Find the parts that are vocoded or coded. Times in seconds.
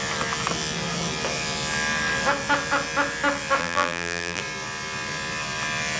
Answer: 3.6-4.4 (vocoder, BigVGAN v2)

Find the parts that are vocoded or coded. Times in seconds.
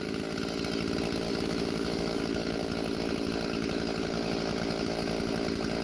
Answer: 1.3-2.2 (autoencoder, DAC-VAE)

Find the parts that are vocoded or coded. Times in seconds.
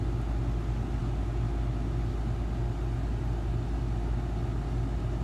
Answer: none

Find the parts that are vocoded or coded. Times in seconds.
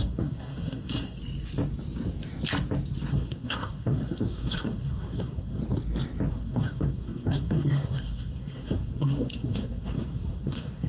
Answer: 0.0-1.2 (codec, SNAC); 3.1-5.6; 6.3-10.9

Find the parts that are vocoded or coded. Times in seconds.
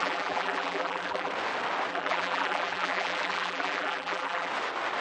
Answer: 0.0-1.3 (vocoder, BigVGAN v2); 1.9-4.5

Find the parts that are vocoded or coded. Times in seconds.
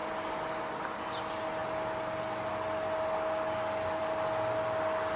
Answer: none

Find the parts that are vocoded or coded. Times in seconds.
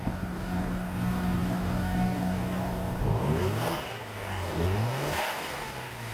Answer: 0.0-6.1 (codec, DAC)